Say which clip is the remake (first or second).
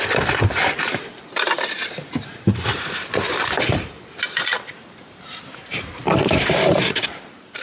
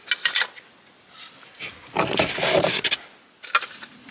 first